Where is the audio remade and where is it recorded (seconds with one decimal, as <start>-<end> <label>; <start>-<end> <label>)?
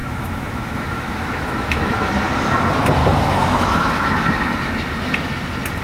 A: 0.0-2.1 remade; 2.1-3.0 recorded; 3.0-4.5 remade; 4.5-5.8 recorded